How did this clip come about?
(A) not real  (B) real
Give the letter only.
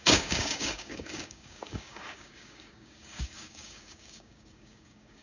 A